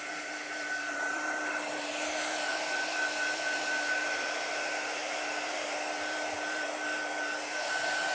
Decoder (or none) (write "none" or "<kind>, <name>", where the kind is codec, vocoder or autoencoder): vocoder, BigVGAN v2